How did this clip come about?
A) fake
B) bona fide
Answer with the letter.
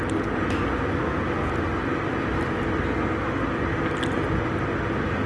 B